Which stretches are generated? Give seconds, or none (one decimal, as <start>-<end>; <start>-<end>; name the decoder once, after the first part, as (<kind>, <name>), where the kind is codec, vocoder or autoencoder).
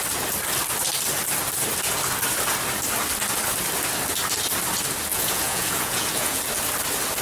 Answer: 5.1-6.4 (vocoder, Vocos)